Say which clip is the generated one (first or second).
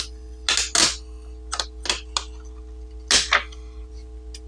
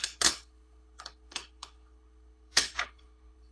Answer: second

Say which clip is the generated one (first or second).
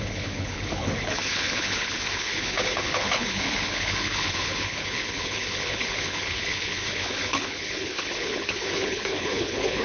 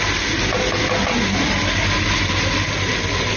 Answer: first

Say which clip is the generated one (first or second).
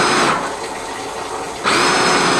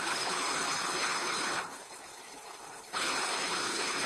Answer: second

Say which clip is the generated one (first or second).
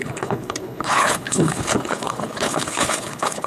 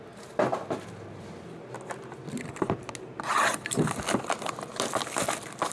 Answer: first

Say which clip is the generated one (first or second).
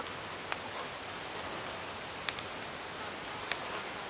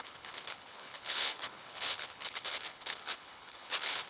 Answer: second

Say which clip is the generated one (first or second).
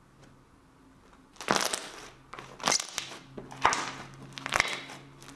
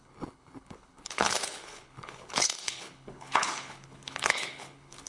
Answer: second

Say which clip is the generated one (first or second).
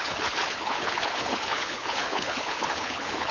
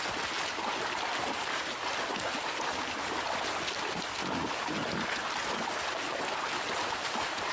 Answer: first